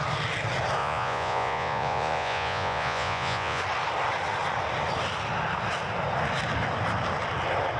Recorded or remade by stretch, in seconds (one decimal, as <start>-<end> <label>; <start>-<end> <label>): 0.0-0.8 recorded; 0.8-3.6 remade; 3.6-7.8 recorded